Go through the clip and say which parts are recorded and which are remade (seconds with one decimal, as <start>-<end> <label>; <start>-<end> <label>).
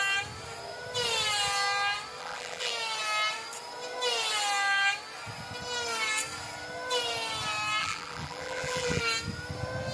0.0-2.2 recorded; 2.2-2.7 remade; 2.7-7.8 recorded; 7.8-9.0 remade; 9.0-9.9 recorded